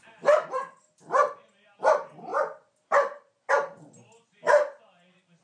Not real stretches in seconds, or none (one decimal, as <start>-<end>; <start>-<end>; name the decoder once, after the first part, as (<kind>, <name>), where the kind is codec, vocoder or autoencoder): 0.0-5.4 (vocoder, BigVGAN v2)